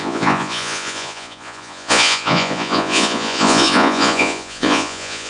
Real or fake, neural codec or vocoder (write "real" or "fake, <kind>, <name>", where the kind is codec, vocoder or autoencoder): fake, vocoder, Vocos